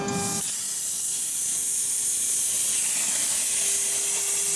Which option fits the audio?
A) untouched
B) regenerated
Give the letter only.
A